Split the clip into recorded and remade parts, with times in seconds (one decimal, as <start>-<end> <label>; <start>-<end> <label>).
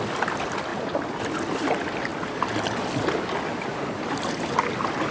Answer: 0.0-5.1 recorded